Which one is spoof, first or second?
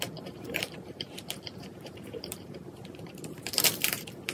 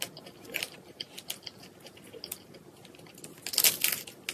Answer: first